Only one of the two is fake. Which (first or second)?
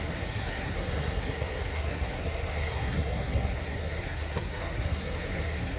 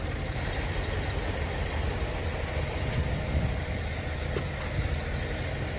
first